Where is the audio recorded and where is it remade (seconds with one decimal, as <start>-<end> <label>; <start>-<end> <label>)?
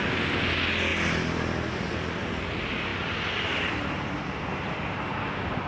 0.0-5.7 recorded